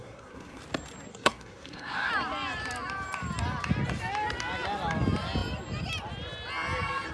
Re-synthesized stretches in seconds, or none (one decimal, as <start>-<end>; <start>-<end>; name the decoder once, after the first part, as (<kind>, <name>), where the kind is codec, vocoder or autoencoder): 0.0-0.6 (codec, SNAC); 1.1-2.1